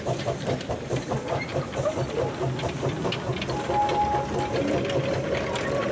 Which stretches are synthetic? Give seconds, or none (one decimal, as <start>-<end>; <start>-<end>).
none